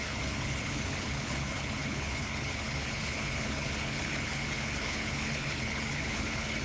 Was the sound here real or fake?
fake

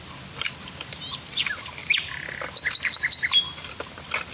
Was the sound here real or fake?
real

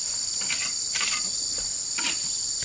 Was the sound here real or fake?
real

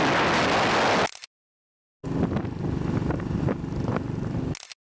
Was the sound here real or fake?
real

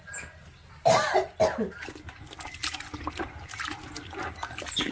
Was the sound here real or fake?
real